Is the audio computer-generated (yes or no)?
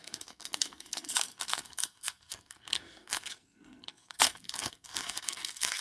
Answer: yes